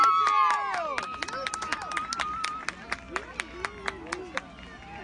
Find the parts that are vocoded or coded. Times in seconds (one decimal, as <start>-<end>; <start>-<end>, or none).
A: none